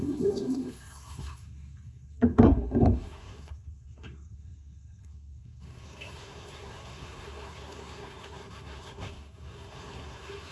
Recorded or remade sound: remade